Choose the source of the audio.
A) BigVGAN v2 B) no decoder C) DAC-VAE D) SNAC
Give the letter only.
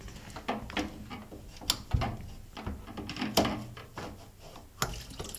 B